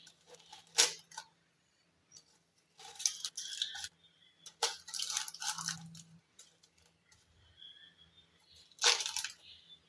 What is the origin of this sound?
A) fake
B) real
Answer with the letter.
B